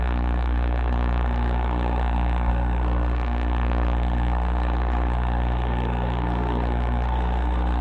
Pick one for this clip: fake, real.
fake